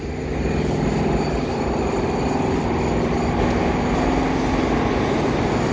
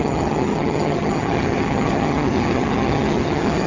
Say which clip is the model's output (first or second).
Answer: second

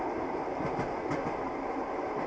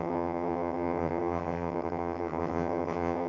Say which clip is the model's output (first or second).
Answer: second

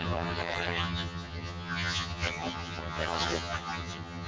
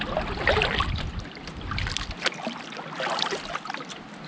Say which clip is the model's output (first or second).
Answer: first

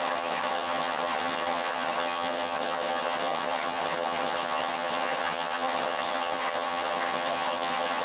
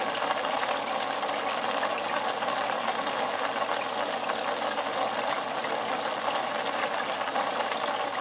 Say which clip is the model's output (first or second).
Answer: first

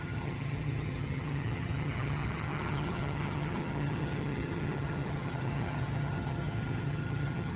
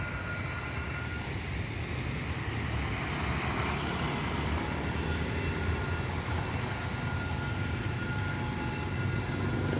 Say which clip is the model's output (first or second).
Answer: first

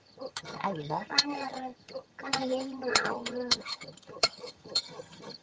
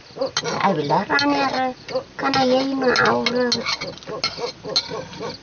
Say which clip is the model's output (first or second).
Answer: first